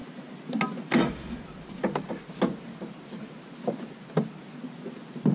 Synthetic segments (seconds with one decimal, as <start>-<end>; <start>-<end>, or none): none